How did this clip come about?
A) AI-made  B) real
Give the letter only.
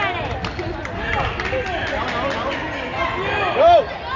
B